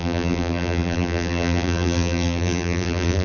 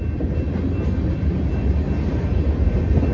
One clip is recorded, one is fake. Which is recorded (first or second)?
second